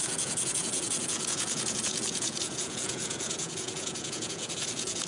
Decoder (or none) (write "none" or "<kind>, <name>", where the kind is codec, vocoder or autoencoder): vocoder, Vocos